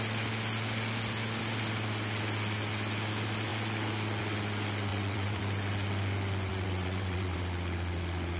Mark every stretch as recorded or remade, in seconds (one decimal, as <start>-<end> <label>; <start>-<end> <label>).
0.0-4.9 recorded; 4.9-5.4 remade; 5.4-6.5 recorded; 6.5-7.4 remade; 7.4-8.4 recorded